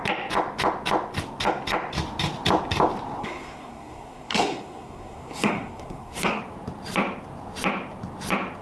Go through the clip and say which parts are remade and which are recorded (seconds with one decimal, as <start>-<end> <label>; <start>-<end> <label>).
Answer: 0.0-3.2 recorded; 3.2-6.4 remade; 6.4-8.6 recorded